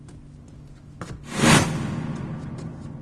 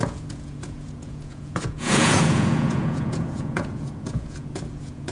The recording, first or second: first